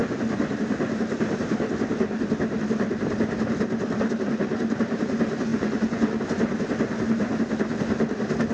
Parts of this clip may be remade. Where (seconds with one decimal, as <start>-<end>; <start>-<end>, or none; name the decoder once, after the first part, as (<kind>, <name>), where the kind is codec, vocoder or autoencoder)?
5.5-6.2 (vocoder, Vocos)